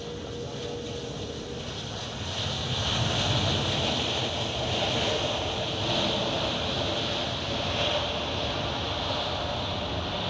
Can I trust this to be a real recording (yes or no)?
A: yes